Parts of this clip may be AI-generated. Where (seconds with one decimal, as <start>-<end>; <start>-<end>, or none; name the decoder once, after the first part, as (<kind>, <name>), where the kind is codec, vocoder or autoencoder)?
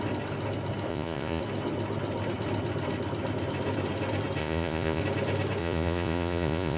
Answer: 0.9-1.4 (vocoder, Vocos); 4.4-5.0; 5.6-6.8